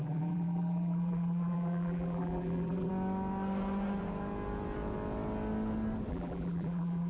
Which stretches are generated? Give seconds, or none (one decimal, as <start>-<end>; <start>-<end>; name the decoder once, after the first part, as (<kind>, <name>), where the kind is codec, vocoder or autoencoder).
0.0-2.9 (vocoder, BigVGAN v2); 6.1-7.1